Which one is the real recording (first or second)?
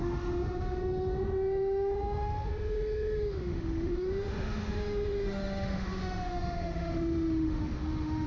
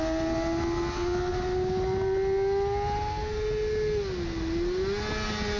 second